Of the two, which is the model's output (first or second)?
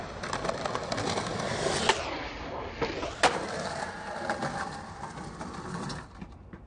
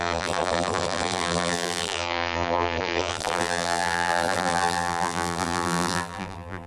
second